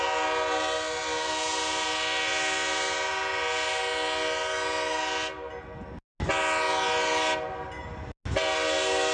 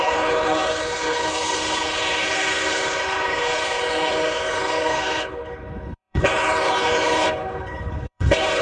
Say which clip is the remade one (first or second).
second